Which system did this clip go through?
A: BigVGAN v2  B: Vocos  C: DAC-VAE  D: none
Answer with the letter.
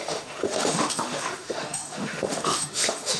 C